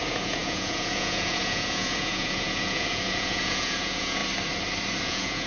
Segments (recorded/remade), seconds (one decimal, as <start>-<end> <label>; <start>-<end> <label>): 0.0-4.2 remade; 4.2-5.0 recorded; 5.0-5.5 remade